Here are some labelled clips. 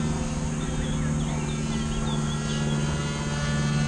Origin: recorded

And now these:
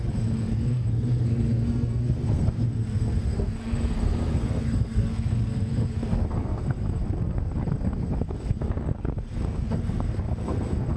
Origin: remade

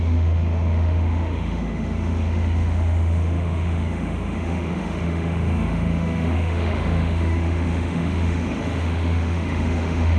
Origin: remade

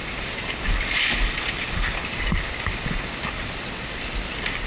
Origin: recorded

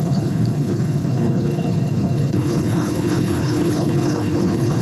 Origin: remade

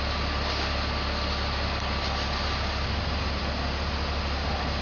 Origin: recorded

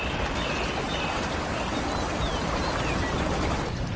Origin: recorded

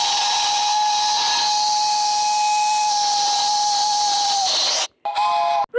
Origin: recorded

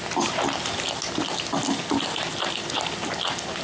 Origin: recorded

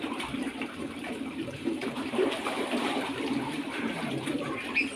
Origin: remade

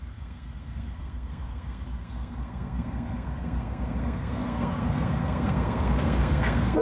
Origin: remade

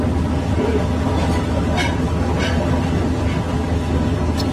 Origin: recorded